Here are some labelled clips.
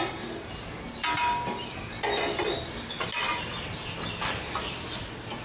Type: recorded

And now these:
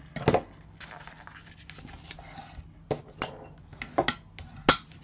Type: recorded